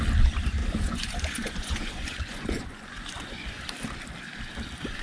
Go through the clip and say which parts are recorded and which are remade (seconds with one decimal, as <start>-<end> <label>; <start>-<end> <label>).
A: 0.0-0.6 recorded; 0.6-3.6 remade; 3.6-5.0 recorded